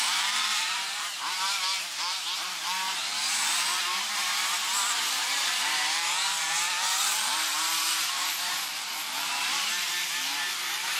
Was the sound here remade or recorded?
remade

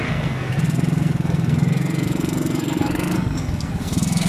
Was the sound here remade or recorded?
remade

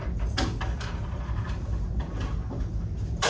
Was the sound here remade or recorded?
recorded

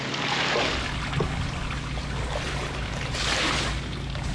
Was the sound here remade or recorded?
recorded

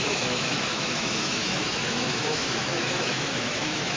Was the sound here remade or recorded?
remade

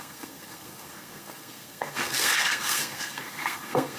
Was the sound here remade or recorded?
remade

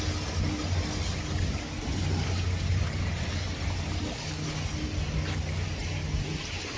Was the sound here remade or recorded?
recorded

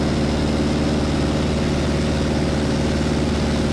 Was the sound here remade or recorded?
recorded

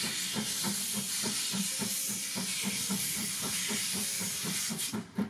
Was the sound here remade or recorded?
remade